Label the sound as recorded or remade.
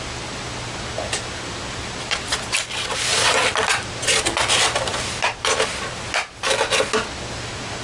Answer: recorded